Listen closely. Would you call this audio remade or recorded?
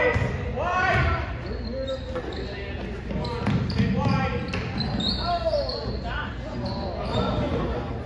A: recorded